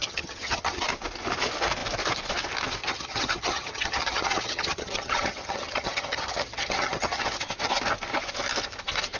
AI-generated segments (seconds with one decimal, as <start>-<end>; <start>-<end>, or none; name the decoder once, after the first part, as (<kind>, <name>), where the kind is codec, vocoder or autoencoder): 0.0-0.8 (vocoder, HiFi-GAN); 2.8-7.4